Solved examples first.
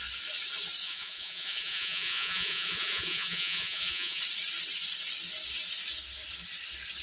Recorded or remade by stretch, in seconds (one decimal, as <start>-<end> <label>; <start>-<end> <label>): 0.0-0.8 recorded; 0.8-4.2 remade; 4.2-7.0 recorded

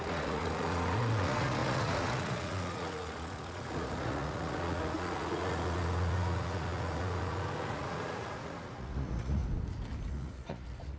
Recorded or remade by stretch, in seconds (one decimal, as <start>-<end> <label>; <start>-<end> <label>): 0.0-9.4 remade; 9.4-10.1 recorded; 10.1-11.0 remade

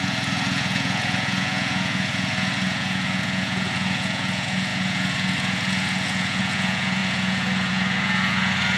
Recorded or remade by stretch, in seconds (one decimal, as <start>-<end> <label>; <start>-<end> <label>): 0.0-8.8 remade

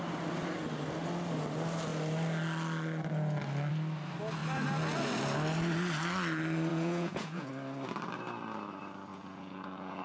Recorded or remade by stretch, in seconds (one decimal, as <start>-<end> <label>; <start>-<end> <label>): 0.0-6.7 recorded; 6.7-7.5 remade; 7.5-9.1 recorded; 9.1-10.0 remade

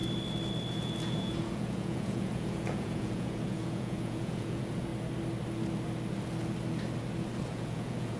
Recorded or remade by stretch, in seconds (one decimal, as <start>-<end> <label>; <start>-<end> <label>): 0.0-0.7 recorded; 0.7-4.9 remade; 4.9-7.4 recorded; 7.4-8.2 remade

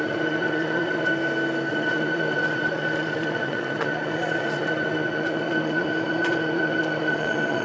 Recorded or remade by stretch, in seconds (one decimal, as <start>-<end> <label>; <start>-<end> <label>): 0.0-1.1 remade; 1.1-1.7 recorded; 1.7-7.6 remade

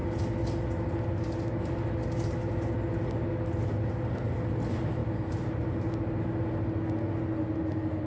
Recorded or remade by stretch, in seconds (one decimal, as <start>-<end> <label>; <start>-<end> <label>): 0.0-8.1 recorded

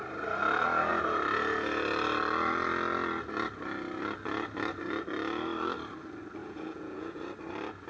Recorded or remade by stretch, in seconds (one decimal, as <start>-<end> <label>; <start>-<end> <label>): 0.0-6.4 recorded; 6.4-7.2 remade; 7.2-7.9 recorded